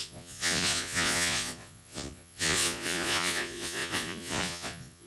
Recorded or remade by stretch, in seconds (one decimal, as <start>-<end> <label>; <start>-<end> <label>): 0.0-5.1 remade